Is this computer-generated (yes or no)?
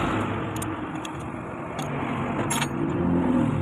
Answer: no